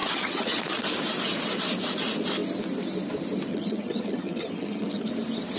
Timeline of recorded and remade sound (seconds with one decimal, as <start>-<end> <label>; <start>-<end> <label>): 0.0-0.6 remade; 0.6-3.5 recorded; 3.5-5.1 remade; 5.1-5.6 recorded